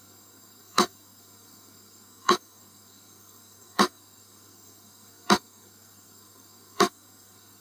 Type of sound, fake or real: fake